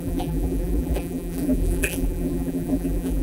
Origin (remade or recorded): remade